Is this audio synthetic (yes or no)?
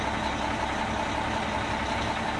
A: no